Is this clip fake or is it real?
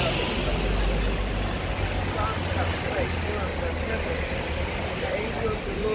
real